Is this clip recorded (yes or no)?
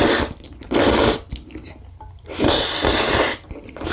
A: yes